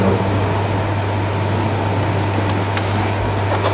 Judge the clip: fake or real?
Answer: real